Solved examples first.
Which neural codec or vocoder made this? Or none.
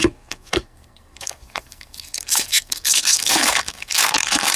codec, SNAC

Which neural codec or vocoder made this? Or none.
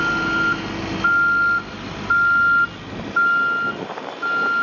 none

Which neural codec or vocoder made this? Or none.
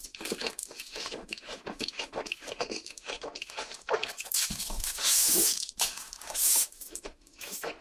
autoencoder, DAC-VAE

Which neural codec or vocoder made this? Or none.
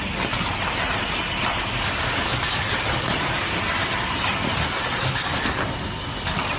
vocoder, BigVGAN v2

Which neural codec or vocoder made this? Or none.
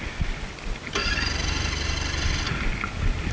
none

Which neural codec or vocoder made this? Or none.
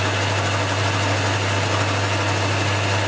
none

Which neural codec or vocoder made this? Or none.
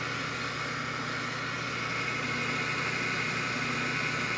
none